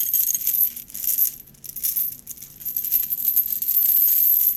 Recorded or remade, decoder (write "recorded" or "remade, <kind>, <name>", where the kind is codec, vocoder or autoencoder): recorded